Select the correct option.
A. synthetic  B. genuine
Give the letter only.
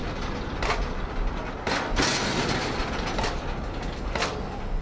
B